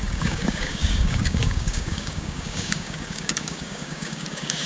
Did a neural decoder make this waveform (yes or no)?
yes